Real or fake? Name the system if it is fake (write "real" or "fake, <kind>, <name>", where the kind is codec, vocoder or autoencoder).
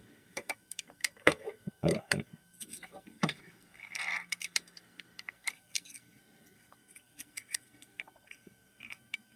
fake, codec, SNAC